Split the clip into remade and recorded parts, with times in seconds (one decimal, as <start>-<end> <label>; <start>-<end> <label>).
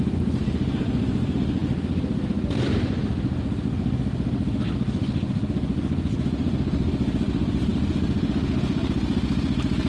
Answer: 0.0-9.9 recorded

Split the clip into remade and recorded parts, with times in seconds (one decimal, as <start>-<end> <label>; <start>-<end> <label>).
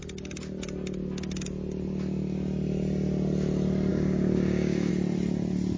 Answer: 0.0-3.9 recorded; 3.9-4.9 remade; 4.9-5.8 recorded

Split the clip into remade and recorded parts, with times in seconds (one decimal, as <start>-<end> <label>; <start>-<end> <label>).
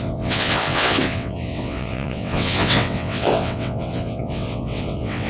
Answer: 0.0-5.3 remade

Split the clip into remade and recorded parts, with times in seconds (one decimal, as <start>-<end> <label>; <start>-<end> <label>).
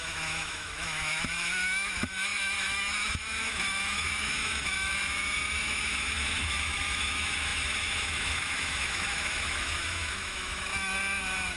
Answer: 0.0-11.6 remade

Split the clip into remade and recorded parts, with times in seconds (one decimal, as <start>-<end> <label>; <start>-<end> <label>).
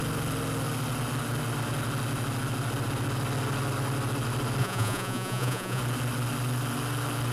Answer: 0.0-4.6 recorded; 4.6-5.8 remade; 5.8-7.3 recorded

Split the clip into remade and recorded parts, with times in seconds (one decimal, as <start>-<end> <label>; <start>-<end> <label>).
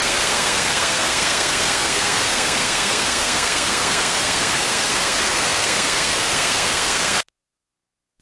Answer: 0.0-8.2 remade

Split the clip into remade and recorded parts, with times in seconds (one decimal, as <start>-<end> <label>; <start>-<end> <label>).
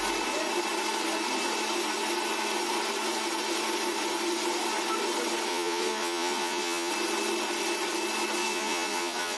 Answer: 0.0-5.5 recorded; 5.5-6.9 remade; 6.9-8.4 recorded; 8.4-9.4 remade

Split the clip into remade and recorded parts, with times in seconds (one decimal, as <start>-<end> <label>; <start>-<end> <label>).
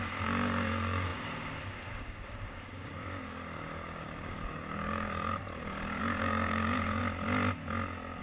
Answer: 0.0-7.0 remade; 7.0-8.2 recorded